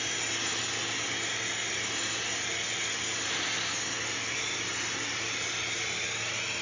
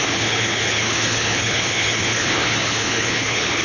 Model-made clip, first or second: second